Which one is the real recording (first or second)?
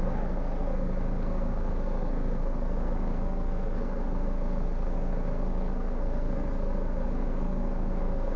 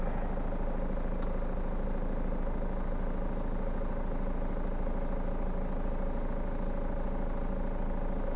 second